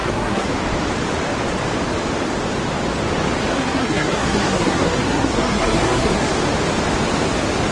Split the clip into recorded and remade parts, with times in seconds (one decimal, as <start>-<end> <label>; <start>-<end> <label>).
0.0-0.5 remade; 0.5-3.5 recorded; 3.5-6.3 remade; 6.3-7.7 recorded